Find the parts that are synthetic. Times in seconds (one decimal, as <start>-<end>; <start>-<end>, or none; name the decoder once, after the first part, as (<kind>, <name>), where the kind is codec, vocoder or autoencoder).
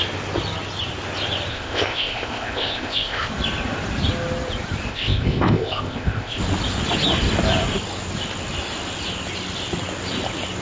1.5-3.3 (codec, ZipCodec); 4.9-6.4